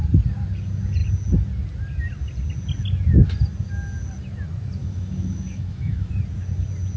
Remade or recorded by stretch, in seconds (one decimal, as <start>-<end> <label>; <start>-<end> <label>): 0.0-4.8 recorded; 4.8-6.1 remade; 6.1-7.0 recorded

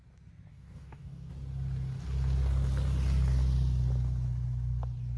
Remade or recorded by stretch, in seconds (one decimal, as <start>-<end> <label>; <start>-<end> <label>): 0.0-0.5 recorded; 0.5-1.3 remade; 1.3-5.2 recorded

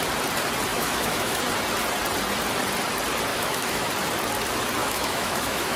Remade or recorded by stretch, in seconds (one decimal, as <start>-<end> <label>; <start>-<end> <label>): 0.0-0.7 recorded; 0.7-1.4 remade; 1.4-3.3 recorded; 3.3-3.9 remade; 3.9-4.8 recorded; 4.8-5.8 remade

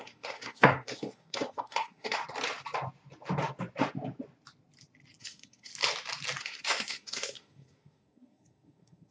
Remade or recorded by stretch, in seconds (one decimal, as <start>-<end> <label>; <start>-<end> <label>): 0.0-2.2 remade; 2.2-5.2 recorded; 5.2-5.7 remade; 5.7-6.4 recorded; 6.4-9.1 remade

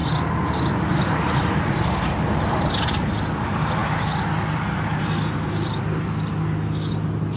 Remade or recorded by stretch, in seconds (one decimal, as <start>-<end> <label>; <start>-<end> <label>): 0.0-3.1 remade; 3.1-7.4 recorded

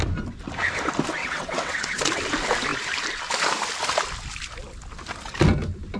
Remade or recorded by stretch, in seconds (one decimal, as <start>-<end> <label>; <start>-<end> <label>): 0.0-1.2 recorded; 1.2-2.0 remade; 2.0-6.0 recorded